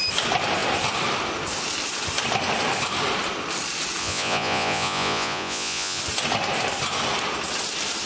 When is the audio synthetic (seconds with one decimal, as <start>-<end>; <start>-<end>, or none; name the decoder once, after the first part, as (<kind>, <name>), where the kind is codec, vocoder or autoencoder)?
4.0-6.0 (vocoder, Vocos)